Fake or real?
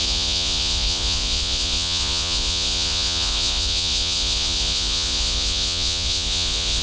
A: fake